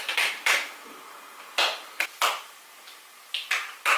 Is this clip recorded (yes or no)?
yes